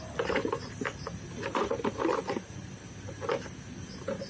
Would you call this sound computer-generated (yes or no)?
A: no